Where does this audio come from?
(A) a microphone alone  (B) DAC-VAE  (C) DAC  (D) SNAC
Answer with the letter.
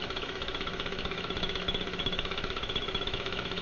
B